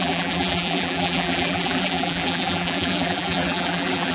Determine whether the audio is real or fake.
fake